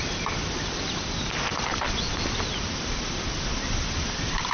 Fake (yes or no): yes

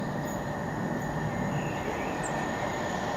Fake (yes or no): no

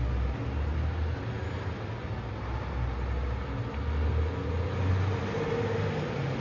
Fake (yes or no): no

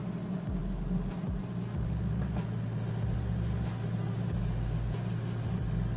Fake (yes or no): no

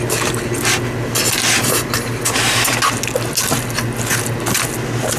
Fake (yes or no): no